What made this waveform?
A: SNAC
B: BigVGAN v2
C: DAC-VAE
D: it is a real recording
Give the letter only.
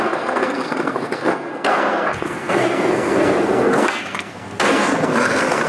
A